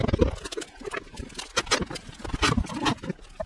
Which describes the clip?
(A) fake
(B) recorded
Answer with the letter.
B